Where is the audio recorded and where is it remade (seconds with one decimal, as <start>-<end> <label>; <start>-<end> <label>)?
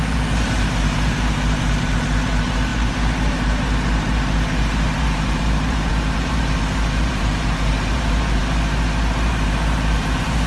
0.0-8.4 remade; 8.4-9.3 recorded; 9.3-10.5 remade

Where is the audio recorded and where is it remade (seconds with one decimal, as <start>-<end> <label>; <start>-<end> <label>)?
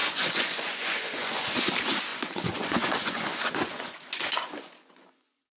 0.0-1.7 remade; 1.7-2.1 recorded; 2.1-5.6 remade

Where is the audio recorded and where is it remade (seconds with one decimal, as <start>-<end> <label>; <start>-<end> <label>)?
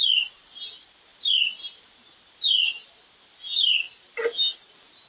0.0-5.1 recorded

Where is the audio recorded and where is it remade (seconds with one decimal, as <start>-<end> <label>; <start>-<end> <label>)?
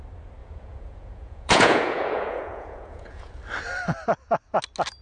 0.0-0.4 recorded; 0.4-3.4 remade; 3.4-5.0 recorded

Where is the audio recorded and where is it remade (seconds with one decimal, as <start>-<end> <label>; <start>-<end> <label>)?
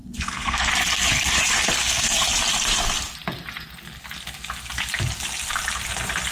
0.0-0.7 remade; 0.7-1.8 recorded; 1.8-2.3 remade; 2.3-6.3 recorded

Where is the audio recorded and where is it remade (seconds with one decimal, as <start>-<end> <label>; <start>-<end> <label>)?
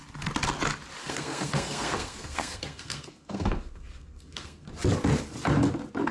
0.0-1.0 recorded; 1.0-4.7 remade; 4.7-6.1 recorded